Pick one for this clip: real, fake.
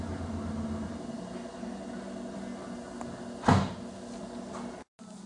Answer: real